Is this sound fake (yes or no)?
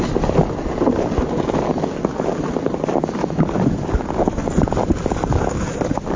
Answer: no